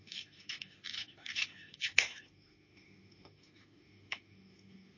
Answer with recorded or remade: remade